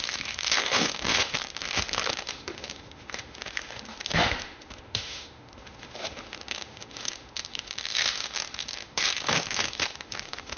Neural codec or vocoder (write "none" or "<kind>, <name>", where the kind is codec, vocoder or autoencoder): autoencoder, DAC-VAE